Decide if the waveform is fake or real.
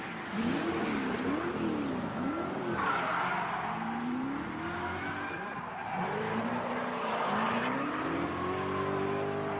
real